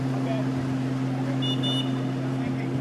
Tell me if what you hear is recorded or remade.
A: recorded